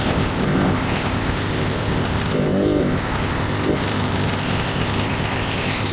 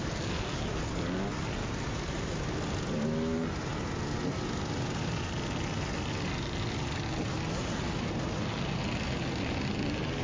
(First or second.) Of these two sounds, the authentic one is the second